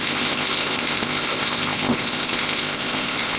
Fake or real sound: fake